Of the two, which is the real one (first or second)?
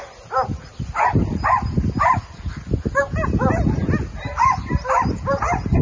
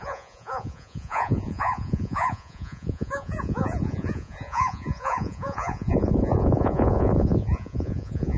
first